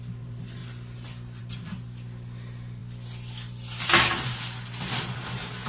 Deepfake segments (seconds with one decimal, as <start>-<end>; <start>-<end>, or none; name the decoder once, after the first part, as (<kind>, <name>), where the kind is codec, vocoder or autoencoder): none

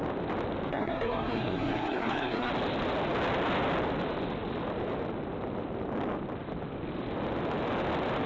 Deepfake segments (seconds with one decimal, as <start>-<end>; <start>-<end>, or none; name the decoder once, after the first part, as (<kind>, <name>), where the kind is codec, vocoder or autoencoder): 0.7-2.5 (codec, SNAC)

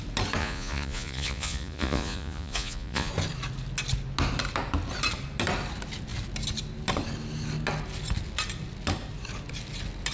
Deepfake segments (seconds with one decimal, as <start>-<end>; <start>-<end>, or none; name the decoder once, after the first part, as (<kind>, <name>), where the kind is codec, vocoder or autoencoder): 0.4-3.1 (vocoder, Vocos)

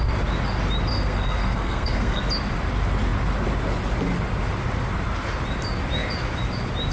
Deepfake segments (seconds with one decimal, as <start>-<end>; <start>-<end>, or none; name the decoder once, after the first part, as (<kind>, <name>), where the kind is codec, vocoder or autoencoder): 0.9-2.2 (codec, SNAC)